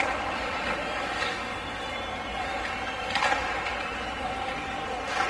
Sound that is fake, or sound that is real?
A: real